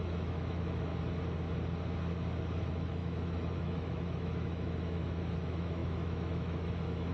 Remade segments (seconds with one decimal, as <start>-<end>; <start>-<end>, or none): 0.0-0.9; 2.6-7.1